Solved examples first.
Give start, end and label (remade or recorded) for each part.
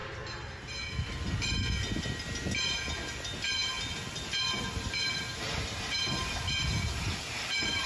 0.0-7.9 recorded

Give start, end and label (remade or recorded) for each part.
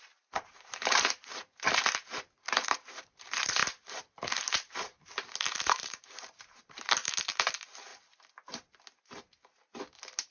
0.0-7.9 remade; 7.9-9.0 recorded; 9.0-10.3 remade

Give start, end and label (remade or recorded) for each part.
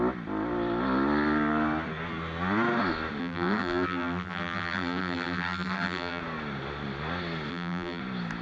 0.0-3.2 recorded; 3.2-6.2 remade; 6.2-7.5 recorded; 7.5-8.0 remade; 8.0-8.4 recorded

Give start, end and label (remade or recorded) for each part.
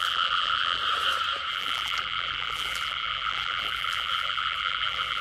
0.0-0.8 remade; 0.8-1.5 recorded; 1.5-5.2 remade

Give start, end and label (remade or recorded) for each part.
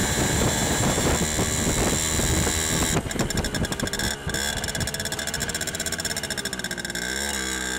0.0-1.1 remade; 1.1-5.4 recorded; 5.4-6.1 remade; 6.1-7.8 recorded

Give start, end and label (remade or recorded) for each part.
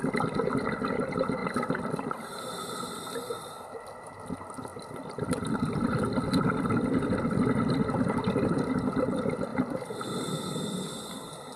0.0-1.4 recorded; 1.4-3.5 remade; 3.5-4.7 recorded; 4.7-7.7 remade; 7.7-9.5 recorded; 9.5-10.2 remade; 10.2-11.6 recorded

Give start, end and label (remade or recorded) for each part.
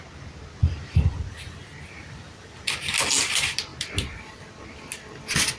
0.0-0.6 recorded; 0.6-2.7 remade; 2.7-5.6 recorded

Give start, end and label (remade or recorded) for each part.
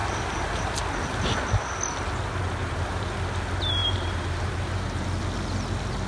0.0-0.8 remade; 0.8-2.6 recorded; 2.6-3.1 remade; 3.1-3.8 recorded; 3.8-5.2 remade; 5.2-6.1 recorded